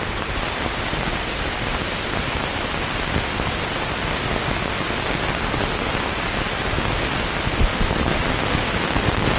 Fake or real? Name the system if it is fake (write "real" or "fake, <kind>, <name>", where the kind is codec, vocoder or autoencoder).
real